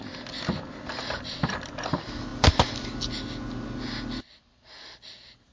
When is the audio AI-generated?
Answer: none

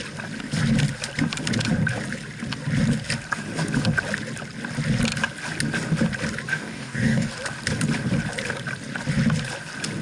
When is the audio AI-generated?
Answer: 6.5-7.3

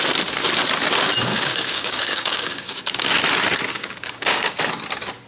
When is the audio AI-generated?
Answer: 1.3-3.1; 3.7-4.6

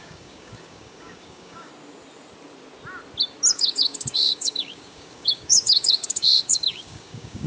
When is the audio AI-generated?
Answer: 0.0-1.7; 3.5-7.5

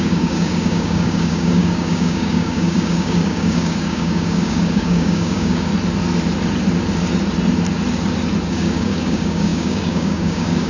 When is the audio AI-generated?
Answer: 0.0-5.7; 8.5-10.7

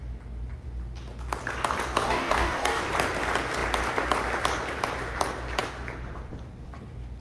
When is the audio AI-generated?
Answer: 2.0-2.8